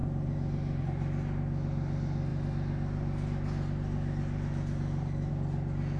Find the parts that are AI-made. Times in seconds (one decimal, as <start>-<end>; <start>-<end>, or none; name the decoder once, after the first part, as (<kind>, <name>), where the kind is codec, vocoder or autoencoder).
0.0-0.8 (vocoder, BigVGAN v2)